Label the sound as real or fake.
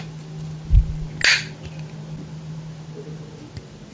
real